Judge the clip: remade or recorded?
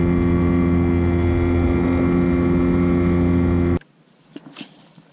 recorded